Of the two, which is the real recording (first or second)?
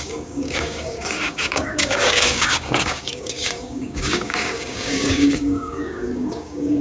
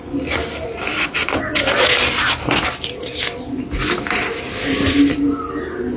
second